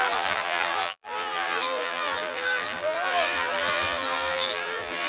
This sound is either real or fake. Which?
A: fake